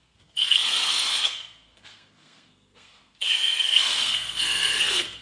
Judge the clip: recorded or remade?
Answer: remade